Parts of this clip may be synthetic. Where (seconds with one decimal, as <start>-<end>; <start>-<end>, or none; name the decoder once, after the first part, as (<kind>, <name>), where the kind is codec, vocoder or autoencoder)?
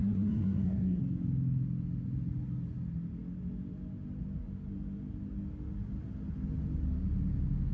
0.0-1.0 (codec, SNAC)